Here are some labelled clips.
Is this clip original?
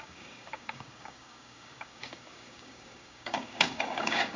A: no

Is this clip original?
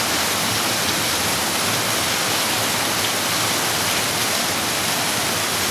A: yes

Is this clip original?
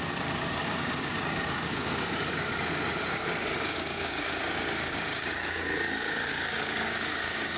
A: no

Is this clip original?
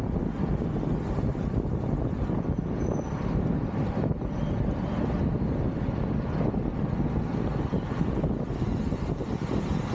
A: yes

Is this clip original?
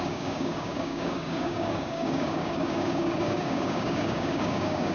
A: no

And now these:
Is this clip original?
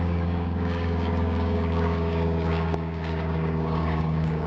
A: no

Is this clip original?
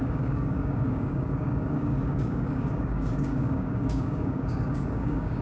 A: no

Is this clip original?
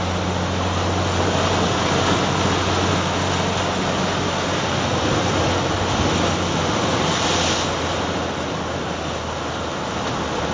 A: yes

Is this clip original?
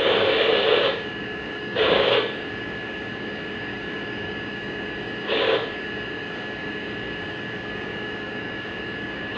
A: no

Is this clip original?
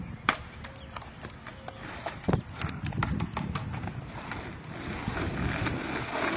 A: yes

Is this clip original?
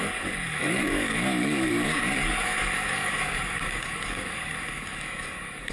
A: no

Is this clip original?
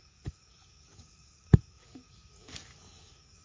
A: no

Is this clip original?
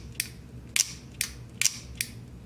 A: yes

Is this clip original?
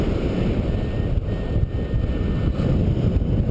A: yes